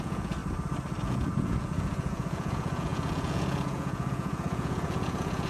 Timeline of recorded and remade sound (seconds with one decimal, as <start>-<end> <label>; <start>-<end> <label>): 0.0-0.4 remade; 0.4-1.0 recorded; 1.0-5.5 remade